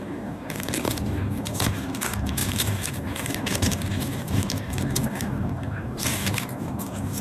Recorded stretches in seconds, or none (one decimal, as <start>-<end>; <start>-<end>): none